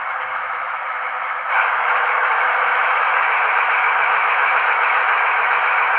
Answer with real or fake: fake